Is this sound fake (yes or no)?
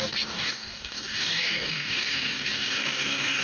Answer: yes